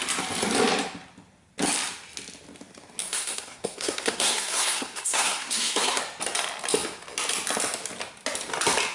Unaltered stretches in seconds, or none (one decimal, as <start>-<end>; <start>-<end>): 0.0-3.0; 6.0-8.9